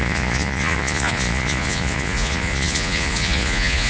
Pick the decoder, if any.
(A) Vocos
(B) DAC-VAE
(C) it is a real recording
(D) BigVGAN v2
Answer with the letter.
A